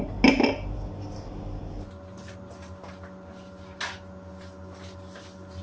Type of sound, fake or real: real